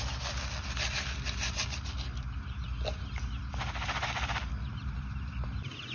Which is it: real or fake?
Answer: real